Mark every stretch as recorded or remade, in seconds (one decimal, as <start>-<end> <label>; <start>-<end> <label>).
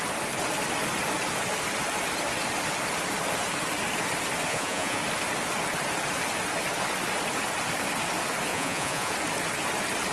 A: 0.0-4.5 recorded; 4.5-5.0 remade; 5.0-8.5 recorded; 8.5-9.1 remade; 9.1-10.1 recorded